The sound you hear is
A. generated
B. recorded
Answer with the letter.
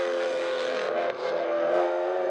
A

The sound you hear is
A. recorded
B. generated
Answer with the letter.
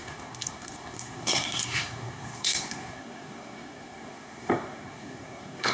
B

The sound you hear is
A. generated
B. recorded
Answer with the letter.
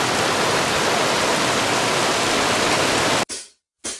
B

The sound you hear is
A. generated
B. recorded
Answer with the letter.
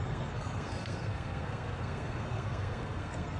A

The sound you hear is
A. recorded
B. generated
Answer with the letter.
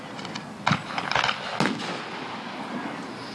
A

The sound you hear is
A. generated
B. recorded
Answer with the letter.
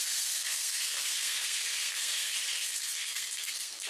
A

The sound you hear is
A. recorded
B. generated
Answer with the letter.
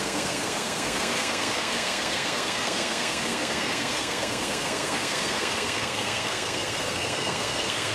B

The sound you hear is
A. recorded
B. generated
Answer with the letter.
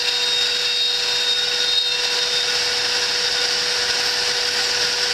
A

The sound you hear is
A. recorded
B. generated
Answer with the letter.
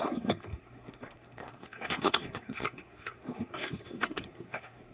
B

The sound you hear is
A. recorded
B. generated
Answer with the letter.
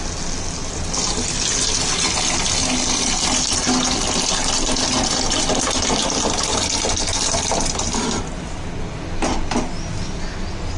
A